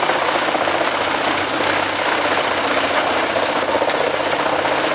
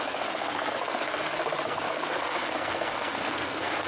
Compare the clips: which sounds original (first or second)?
first